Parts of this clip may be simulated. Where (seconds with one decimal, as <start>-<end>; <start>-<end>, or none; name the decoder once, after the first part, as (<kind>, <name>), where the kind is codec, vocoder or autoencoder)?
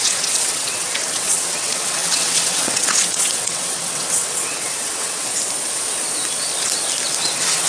0.0-5.3 (vocoder, WaveNeXt); 7.2-7.7